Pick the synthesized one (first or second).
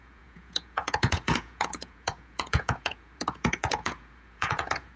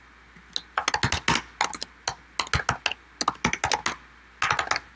first